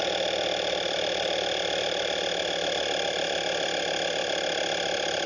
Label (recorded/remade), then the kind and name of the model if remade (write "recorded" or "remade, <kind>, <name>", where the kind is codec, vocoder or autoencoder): recorded